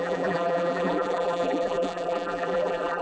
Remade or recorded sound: remade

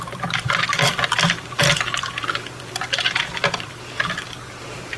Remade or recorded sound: remade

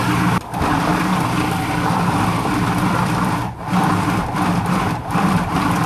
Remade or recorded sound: remade